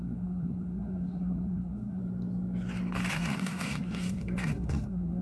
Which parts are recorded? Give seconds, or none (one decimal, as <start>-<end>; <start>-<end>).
2.0-3.1